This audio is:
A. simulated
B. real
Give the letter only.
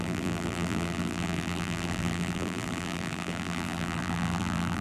A